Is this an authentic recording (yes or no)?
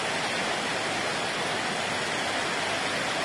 yes